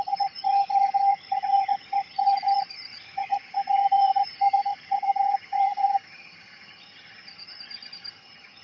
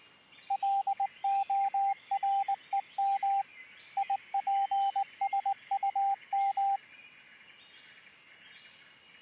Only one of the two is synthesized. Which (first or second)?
first